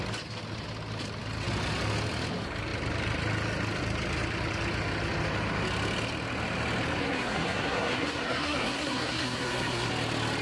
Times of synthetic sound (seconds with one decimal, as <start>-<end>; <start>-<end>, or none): 7.0-9.9